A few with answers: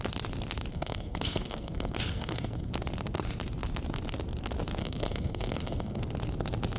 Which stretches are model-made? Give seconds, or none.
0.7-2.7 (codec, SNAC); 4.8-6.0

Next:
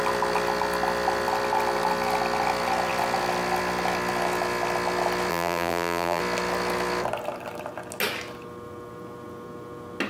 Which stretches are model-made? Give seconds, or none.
5.3-6.2 (vocoder, BigVGAN v2)